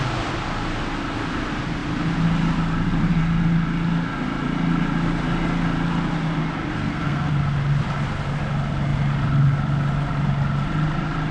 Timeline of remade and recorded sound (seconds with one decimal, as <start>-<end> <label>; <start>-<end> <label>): 0.0-6.7 recorded; 6.7-7.3 remade; 7.3-11.3 recorded